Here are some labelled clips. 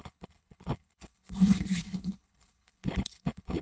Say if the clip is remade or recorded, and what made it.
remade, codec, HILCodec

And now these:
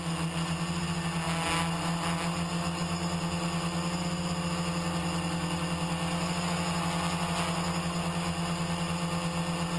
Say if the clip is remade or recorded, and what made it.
recorded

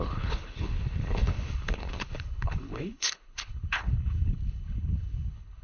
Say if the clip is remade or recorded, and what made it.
remade, codec, HILCodec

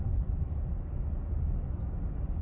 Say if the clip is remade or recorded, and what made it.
recorded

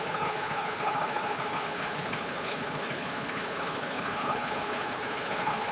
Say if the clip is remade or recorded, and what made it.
remade, codec, HILCodec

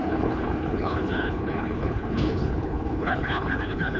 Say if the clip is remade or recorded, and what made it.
remade, codec, HILCodec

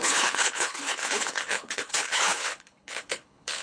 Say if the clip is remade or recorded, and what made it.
remade, codec, HILCodec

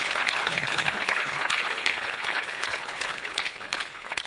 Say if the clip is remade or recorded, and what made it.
remade, codec, HILCodec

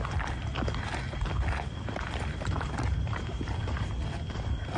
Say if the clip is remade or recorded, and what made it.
recorded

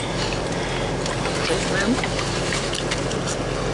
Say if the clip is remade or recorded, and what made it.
recorded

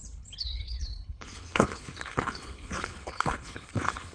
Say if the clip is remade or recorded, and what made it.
remade, codec, HILCodec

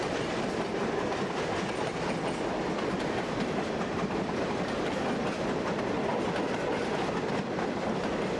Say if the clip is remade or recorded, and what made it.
recorded